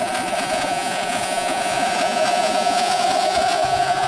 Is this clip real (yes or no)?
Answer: no